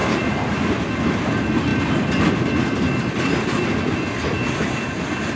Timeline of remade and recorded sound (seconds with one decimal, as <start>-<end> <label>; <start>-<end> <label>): 0.0-5.4 recorded